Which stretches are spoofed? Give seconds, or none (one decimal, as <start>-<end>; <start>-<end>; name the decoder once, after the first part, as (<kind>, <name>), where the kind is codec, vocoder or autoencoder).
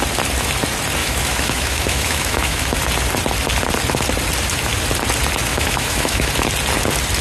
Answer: 1.0-2.8 (autoencoder, DAC-VAE); 5.5-6.3